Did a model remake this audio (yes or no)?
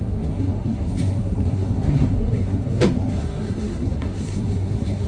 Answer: yes